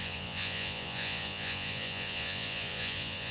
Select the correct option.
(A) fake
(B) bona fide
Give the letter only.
A